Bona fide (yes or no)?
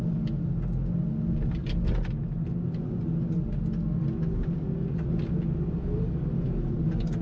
yes